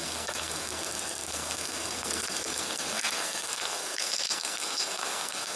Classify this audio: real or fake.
fake